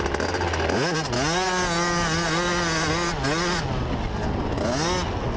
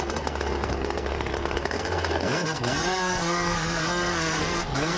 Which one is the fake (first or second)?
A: second